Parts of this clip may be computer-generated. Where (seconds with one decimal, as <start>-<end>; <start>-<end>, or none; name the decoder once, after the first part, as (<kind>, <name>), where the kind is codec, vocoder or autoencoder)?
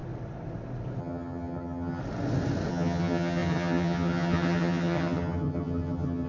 1.0-2.0 (vocoder, HiFi-GAN); 2.7-6.3